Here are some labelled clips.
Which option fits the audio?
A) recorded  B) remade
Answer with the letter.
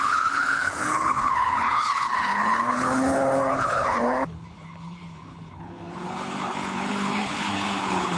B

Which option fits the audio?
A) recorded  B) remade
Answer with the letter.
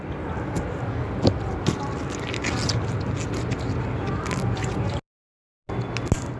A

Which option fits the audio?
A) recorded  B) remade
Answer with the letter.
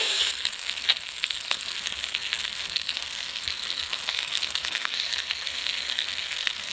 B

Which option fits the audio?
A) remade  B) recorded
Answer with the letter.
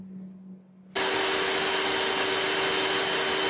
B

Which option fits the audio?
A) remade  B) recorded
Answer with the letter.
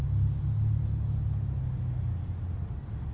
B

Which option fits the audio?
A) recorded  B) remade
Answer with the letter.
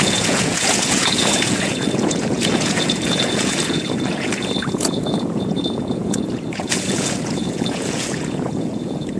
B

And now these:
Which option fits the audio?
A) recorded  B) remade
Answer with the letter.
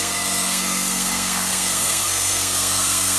B